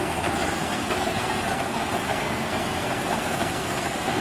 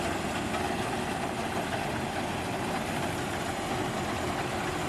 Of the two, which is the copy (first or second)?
first